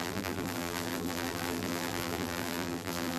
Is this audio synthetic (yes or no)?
yes